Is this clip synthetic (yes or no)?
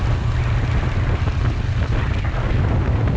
no